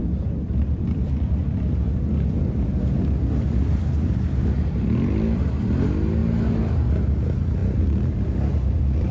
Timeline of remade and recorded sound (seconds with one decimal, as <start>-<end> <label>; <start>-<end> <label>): 0.0-1.4 remade; 1.4-9.1 recorded